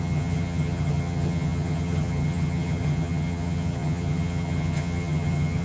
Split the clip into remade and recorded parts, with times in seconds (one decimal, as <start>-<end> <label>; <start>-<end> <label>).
0.0-5.6 remade